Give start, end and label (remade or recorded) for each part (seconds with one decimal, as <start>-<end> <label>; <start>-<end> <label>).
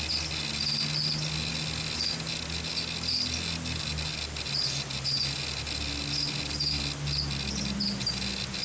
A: 0.0-8.6 recorded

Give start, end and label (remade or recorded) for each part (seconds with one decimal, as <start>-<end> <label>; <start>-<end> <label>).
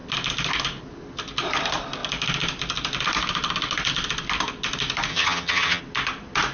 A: 0.0-5.1 recorded; 5.1-5.8 remade; 5.8-6.5 recorded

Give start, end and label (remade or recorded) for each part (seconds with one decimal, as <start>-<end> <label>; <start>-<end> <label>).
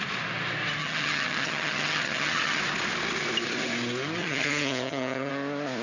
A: 0.0-0.8 recorded; 0.8-2.6 remade; 2.6-4.2 recorded; 4.2-5.3 remade; 5.3-5.8 recorded